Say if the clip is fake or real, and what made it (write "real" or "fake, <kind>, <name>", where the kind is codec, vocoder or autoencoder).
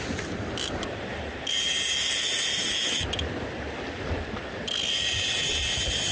fake, vocoder, BigVGAN v2